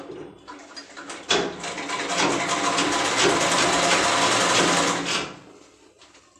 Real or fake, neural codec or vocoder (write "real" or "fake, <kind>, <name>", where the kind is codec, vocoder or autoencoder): real